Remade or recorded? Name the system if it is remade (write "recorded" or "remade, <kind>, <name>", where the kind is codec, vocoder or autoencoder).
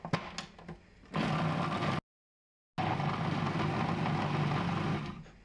recorded